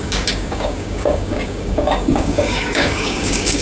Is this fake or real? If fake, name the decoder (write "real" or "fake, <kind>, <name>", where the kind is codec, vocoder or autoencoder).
fake, codec, DAC